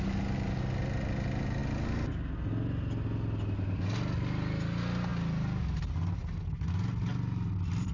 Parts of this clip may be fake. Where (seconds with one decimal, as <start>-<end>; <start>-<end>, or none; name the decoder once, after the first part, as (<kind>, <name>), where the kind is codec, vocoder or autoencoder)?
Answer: none